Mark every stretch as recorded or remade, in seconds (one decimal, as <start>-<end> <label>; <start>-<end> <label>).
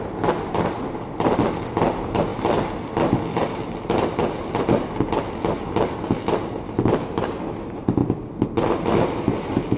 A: 0.0-9.8 recorded